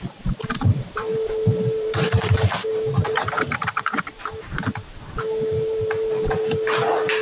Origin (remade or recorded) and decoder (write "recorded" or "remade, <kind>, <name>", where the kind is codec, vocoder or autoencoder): remade, vocoder, BigVGAN v2